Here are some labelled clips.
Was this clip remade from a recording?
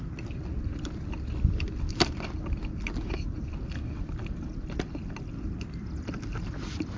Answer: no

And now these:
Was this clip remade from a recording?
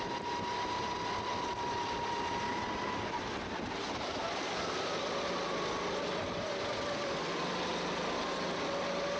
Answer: no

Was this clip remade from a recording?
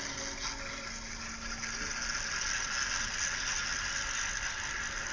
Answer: no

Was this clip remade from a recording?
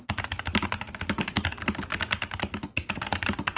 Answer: no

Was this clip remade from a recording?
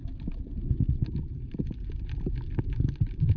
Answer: no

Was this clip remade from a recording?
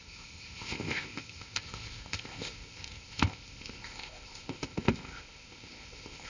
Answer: yes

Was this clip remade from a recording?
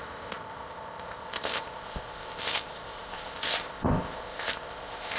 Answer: yes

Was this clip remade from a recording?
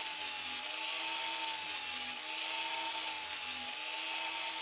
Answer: no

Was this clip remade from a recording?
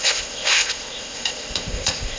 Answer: yes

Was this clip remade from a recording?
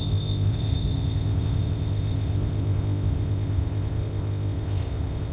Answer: yes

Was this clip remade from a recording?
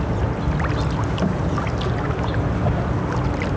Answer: no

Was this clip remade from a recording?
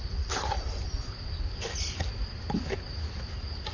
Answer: no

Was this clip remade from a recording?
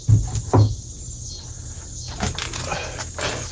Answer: no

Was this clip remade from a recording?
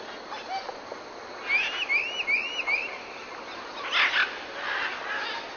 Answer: no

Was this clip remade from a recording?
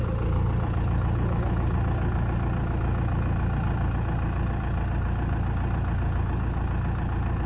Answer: no